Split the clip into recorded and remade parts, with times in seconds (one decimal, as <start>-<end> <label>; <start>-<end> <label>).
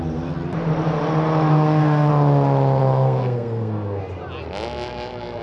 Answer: 0.0-1.5 recorded; 1.5-2.1 remade; 2.1-2.8 recorded; 2.8-4.0 remade; 4.0-5.4 recorded